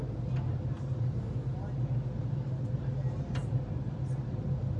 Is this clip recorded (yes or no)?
yes